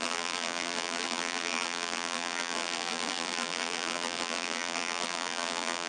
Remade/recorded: remade